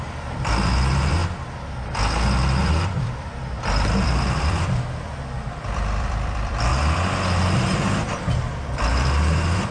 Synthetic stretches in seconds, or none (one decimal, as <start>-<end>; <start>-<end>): 0.0-1.2; 2.4-6.7; 7.6-9.7